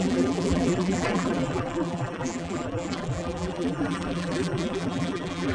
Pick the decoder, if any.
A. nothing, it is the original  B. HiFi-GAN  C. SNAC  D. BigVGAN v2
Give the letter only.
D